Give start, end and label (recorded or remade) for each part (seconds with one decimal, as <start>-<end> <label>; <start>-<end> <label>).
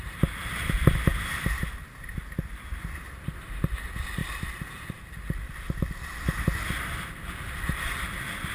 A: 0.0-8.5 recorded